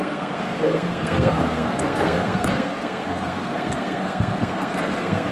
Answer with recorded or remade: remade